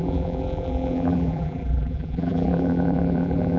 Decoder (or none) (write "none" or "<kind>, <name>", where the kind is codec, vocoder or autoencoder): vocoder, BigVGAN v2